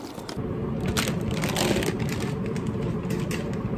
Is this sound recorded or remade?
recorded